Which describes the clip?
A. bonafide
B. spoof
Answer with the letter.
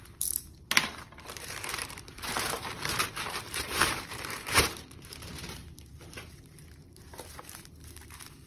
B